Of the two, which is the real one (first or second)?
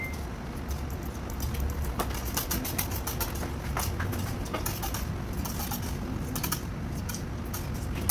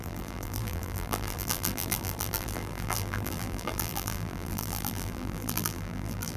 first